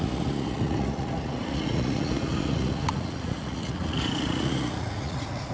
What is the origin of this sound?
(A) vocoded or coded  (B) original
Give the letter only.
A